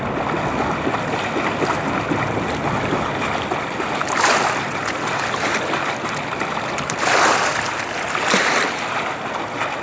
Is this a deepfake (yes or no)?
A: no